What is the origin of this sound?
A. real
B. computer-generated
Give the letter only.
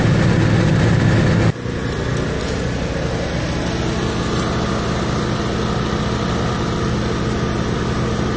A